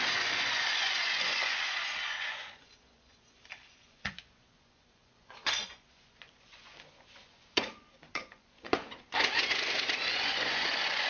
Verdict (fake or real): fake